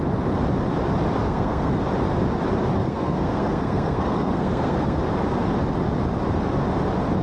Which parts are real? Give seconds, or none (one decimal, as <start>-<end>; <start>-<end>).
0.0-1.2; 1.8-2.8; 5.0-7.2